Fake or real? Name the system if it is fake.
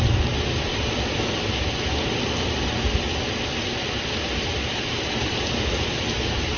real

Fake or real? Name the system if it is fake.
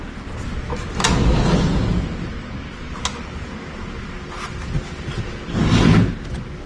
real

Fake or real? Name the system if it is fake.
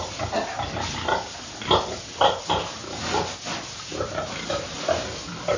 real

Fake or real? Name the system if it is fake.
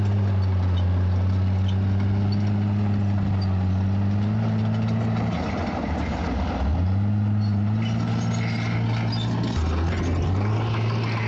real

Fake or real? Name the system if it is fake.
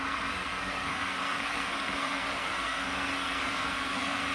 fake, codec, SNAC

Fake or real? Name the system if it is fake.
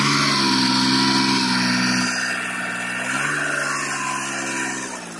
real